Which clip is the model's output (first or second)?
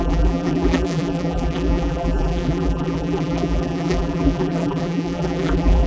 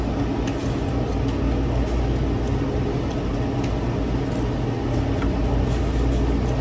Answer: first